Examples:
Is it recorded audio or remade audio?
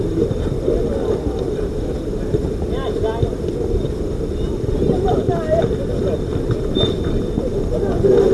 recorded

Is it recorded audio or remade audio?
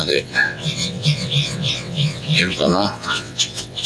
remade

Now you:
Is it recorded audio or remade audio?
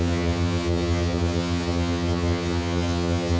remade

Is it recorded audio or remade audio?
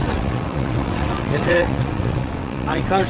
remade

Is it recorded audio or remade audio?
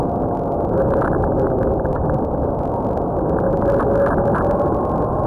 recorded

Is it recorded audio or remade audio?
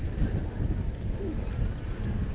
remade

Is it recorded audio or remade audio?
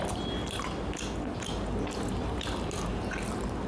recorded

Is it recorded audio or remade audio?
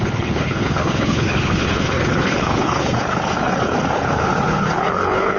remade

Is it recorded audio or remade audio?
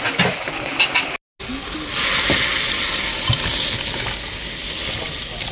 recorded